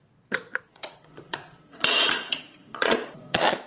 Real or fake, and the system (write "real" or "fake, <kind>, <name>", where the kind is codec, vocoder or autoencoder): fake, vocoder, Vocos